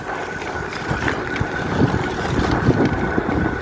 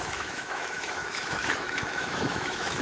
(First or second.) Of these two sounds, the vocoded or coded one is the second